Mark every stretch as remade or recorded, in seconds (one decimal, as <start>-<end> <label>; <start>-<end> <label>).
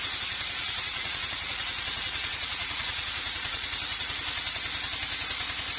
0.0-0.6 recorded; 0.6-4.1 remade; 4.1-5.8 recorded